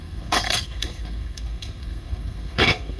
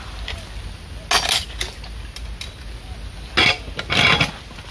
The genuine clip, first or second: second